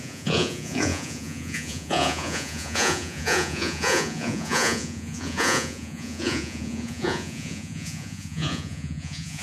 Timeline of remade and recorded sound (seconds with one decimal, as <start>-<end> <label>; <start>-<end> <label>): 0.0-9.4 remade